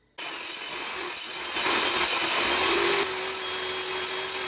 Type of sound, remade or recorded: recorded